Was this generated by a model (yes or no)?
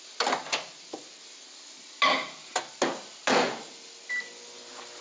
no